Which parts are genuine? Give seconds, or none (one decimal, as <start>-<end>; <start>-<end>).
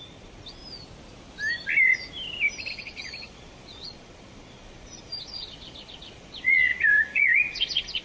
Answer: 0.6-2.7